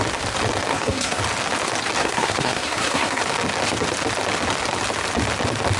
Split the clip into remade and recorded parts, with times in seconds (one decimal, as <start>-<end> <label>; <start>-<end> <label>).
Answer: 0.0-0.7 recorded; 0.7-1.2 remade; 1.2-2.0 recorded; 2.0-3.2 remade; 3.2-5.8 recorded